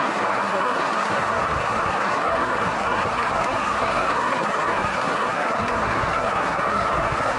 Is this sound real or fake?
fake